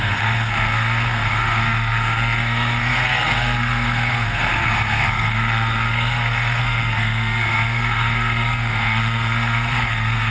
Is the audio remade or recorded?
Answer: remade